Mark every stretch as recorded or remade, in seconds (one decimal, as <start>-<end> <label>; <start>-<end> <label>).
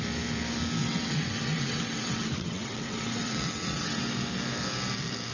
0.0-0.8 recorded; 0.8-4.0 remade; 4.0-5.3 recorded